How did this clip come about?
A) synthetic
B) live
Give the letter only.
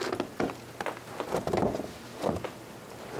B